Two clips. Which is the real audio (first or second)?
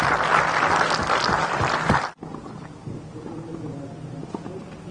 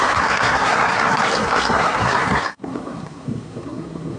first